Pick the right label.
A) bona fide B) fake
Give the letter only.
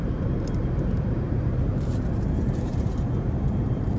B